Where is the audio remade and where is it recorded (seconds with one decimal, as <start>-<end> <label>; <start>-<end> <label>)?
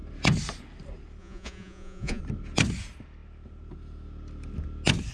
0.0-1.2 recorded; 1.2-2.2 remade; 2.2-5.1 recorded